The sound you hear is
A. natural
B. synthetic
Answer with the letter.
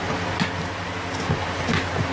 A